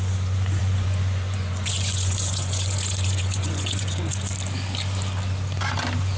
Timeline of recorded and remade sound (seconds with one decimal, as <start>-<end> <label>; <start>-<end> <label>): 0.0-0.6 recorded; 0.6-4.3 remade; 4.3-6.2 recorded